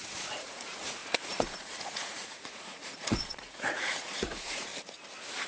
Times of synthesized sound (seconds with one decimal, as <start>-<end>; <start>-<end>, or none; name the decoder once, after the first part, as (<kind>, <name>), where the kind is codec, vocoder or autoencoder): 0.0-4.7 (vocoder, Vocos)